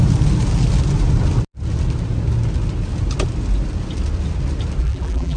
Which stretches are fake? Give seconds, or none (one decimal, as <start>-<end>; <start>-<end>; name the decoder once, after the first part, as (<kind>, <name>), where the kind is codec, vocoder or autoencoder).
4.8-5.4 (vocoder, BigVGAN v2)